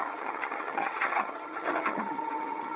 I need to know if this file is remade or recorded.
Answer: remade